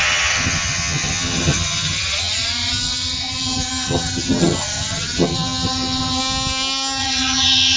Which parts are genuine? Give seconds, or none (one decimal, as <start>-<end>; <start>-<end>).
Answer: 6.2-7.0